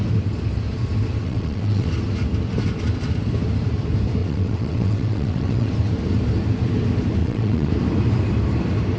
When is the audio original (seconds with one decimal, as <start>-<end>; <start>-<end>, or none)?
0.0-1.2; 1.9-4.2; 5.7-7.2; 7.7-9.0